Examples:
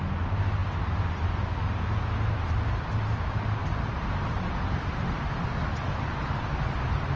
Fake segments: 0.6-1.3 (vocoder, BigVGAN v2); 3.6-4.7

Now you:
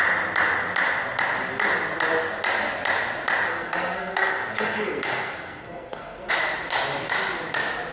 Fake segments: 3.5-6.3 (codec, SNAC)